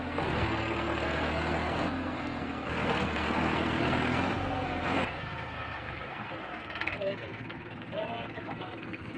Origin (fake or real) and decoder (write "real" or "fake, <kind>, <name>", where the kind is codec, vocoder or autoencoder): fake, codec, SNAC